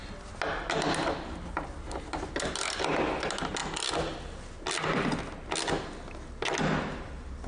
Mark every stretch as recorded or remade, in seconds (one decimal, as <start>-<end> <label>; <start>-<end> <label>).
0.0-7.5 recorded